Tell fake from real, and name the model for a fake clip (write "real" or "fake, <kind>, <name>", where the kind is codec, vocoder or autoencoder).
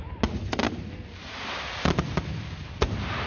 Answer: real